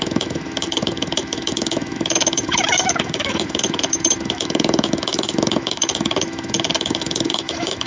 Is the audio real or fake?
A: fake